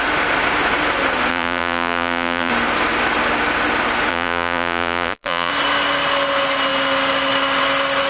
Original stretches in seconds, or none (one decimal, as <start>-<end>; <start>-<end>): 0.0-1.3; 2.5-4.1; 5.5-8.1